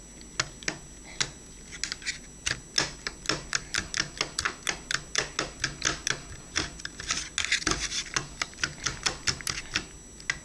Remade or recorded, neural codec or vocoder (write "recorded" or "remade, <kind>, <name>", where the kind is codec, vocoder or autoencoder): recorded